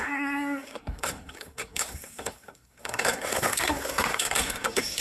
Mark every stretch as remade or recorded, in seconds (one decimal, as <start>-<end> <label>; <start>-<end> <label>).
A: 0.0-5.0 remade